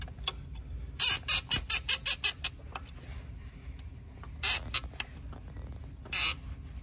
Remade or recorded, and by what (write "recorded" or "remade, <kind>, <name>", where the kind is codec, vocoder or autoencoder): recorded